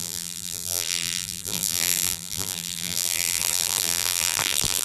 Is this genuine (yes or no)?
no